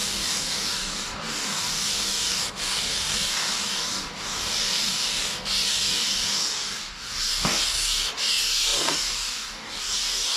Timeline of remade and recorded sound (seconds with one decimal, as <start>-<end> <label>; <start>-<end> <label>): 0.0-10.4 remade